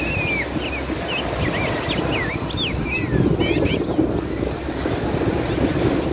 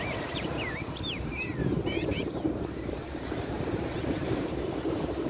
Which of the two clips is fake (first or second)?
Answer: second